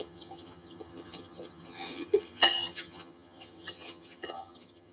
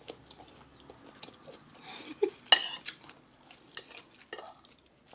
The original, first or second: second